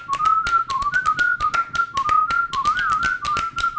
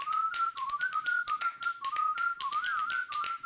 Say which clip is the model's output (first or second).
second